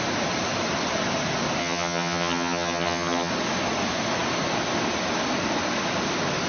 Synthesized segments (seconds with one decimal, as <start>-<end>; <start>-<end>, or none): 1.6-3.3